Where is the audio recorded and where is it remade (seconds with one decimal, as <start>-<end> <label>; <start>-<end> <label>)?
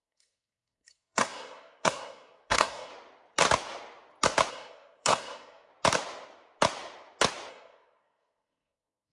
0.0-2.9 remade; 2.9-4.5 recorded; 4.5-5.7 remade; 5.7-7.5 recorded; 7.5-9.1 remade